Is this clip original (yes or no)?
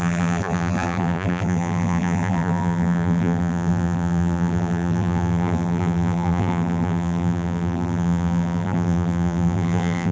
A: no